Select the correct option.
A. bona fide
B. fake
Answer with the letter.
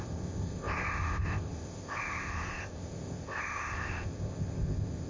B